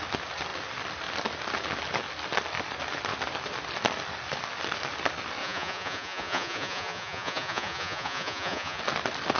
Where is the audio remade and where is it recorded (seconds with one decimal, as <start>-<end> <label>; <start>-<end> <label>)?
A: 0.0-5.4 recorded; 5.4-8.8 remade; 8.8-9.4 recorded